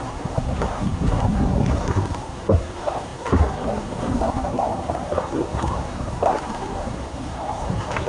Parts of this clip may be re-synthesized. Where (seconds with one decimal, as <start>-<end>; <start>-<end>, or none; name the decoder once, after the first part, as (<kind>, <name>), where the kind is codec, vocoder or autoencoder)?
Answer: 0.0-8.1 (codec, SNAC)